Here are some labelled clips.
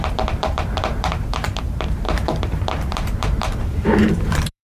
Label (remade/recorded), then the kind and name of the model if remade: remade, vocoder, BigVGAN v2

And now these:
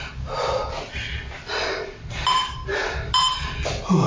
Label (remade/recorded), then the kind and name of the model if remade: recorded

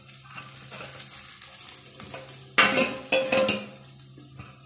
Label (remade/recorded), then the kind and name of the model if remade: recorded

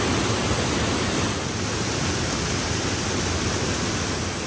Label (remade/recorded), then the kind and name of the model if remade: recorded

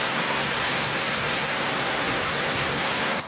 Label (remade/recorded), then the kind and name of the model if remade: remade, codec, SNAC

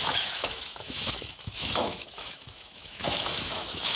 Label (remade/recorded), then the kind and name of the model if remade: remade, autoencoder, DAC-VAE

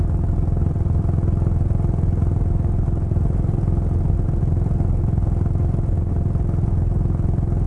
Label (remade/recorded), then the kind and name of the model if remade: recorded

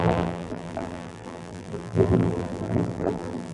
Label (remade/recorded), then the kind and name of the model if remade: remade, vocoder, BigVGAN v2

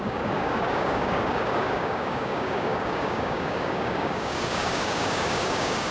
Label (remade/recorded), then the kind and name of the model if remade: remade, codec, DAC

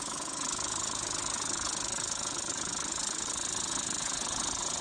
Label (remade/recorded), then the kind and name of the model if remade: remade, vocoder, Vocos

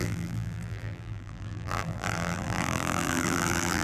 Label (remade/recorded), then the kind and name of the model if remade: remade, vocoder, BigVGAN v2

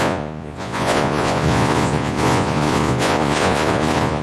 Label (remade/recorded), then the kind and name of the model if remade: remade, vocoder, Vocos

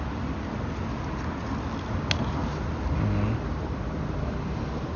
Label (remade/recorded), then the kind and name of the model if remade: recorded